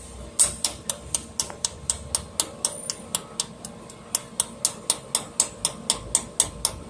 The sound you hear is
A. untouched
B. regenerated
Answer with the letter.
A